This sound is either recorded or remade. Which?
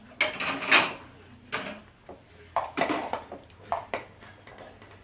recorded